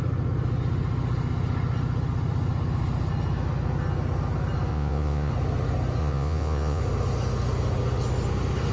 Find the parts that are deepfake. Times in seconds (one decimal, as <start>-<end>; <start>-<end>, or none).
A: 4.7-5.3; 6.0-6.8